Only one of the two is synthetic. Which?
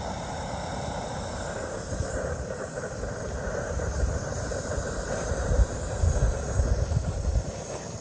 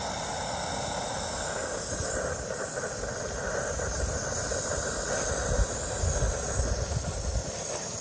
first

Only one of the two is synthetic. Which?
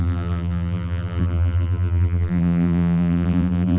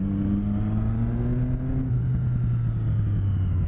first